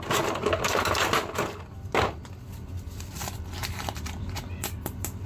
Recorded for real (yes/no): yes